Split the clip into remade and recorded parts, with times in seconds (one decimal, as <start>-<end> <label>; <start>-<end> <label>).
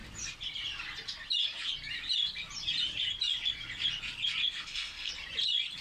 0.0-4.4 recorded; 4.4-5.1 remade; 5.1-5.8 recorded